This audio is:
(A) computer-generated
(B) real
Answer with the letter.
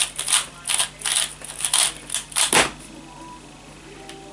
B